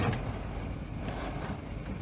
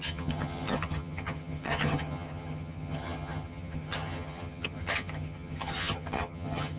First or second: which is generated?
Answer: second